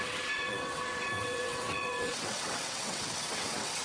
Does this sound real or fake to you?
fake